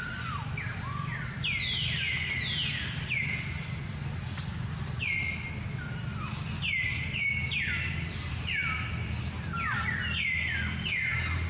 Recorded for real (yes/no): yes